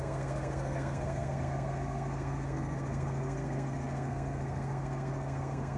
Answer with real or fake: fake